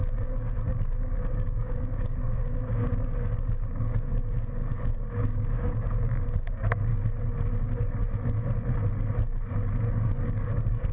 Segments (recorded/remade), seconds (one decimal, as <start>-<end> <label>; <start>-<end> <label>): 0.0-6.9 remade; 6.9-9.9 recorded; 9.9-10.9 remade